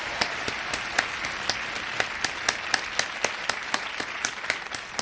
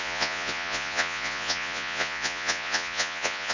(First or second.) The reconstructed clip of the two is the second